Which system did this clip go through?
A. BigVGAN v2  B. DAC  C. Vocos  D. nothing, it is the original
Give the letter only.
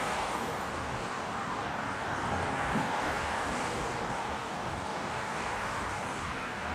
B